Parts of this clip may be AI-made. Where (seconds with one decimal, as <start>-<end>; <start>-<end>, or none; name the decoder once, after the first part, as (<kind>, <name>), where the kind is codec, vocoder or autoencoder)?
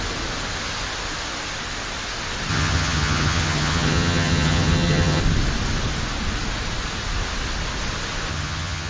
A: 2.5-5.2 (vocoder, HiFi-GAN); 8.3-8.9